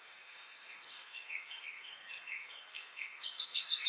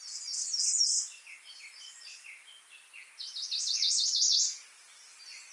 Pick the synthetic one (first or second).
first